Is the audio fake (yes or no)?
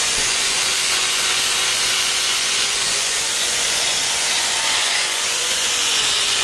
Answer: yes